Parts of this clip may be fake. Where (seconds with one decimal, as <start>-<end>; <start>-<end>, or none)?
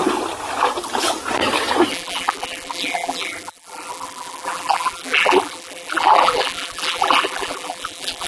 1.9-8.3